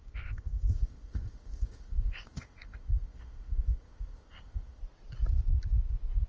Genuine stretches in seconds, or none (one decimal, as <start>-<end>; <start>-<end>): 4.8-6.3